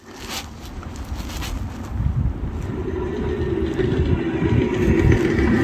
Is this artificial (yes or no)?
no